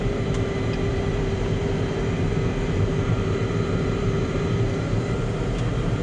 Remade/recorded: remade